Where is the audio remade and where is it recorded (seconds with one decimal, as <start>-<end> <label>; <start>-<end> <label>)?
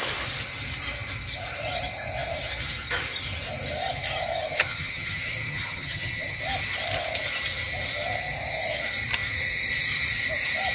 0.0-4.5 recorded; 4.5-6.4 remade; 6.4-10.7 recorded